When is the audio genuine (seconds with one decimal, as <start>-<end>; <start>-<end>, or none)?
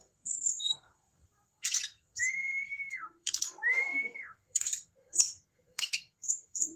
none